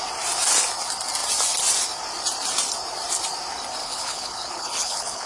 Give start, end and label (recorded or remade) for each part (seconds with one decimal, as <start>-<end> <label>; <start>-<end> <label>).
0.0-3.8 recorded; 3.8-5.3 remade